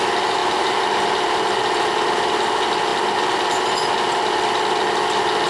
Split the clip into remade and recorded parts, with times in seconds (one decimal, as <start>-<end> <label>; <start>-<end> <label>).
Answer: 0.0-0.4 recorded; 0.4-1.6 remade; 1.6-5.5 recorded